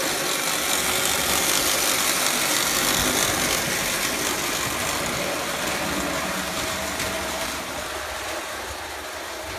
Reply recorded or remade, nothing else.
recorded